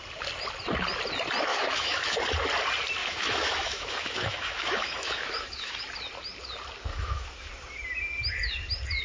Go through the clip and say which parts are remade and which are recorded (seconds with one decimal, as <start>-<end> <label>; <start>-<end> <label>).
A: 0.0-1.5 recorded; 1.5-2.2 remade; 2.2-3.0 recorded; 3.0-5.8 remade; 5.8-6.9 recorded; 6.9-7.5 remade; 7.5-9.0 recorded